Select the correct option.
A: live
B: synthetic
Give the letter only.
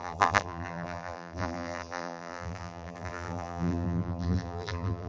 B